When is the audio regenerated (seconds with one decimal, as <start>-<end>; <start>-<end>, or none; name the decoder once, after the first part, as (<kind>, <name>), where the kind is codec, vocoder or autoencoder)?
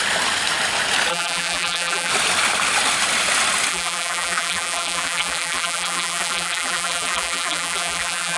1.1-2.1 (vocoder, BigVGAN v2); 3.7-8.4